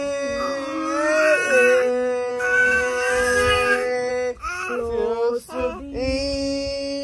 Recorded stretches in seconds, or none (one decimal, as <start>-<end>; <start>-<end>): 0.0-2.3; 4.1-7.0

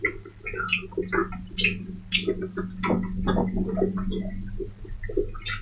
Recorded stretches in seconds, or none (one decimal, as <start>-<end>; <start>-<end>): 0.0-5.6

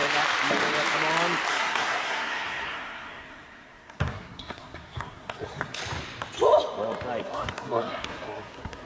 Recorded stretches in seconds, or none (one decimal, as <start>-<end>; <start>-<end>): 0.0-1.5; 5.8-7.2